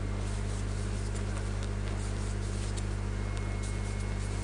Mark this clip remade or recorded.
recorded